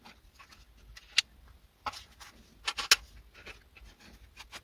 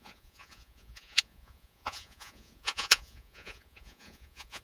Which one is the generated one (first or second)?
second